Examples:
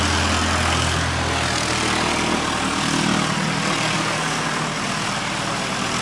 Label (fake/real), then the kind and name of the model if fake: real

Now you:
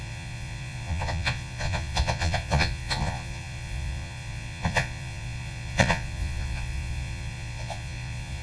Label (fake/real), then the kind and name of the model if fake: fake, vocoder, Vocos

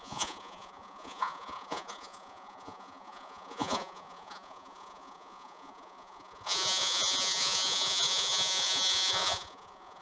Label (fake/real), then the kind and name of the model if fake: fake, vocoder, Vocos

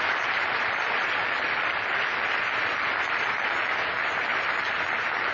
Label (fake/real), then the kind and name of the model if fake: real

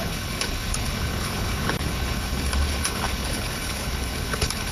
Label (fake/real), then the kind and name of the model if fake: fake, codec, HILCodec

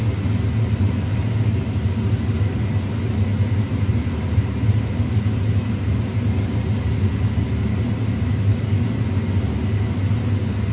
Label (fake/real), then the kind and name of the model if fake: real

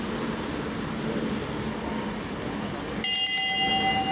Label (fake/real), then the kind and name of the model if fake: real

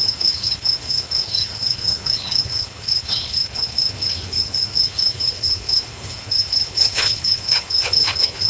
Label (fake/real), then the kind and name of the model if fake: fake, codec, HILCodec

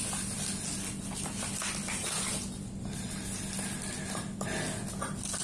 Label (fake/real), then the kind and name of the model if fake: real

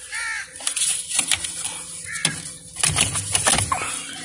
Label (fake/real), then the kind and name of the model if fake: real